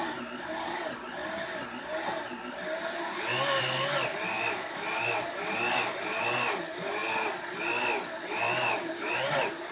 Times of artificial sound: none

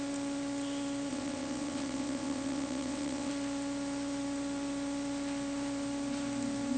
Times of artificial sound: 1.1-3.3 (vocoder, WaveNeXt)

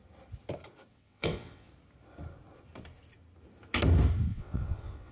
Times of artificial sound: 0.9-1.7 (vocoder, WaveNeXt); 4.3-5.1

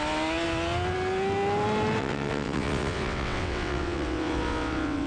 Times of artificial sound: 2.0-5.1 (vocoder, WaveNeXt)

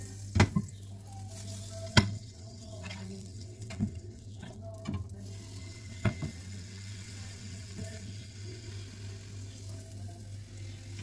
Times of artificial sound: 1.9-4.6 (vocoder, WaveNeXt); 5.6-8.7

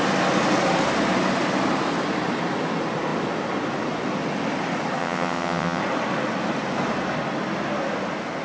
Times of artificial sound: 5.0-5.8 (vocoder, WaveNeXt)

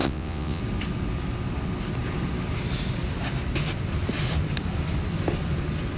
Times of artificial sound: 0.0-0.6 (vocoder, WaveNeXt)

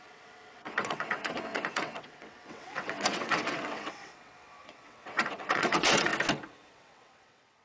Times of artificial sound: 0.0-6.1 (vocoder, WaveNeXt); 6.7-7.6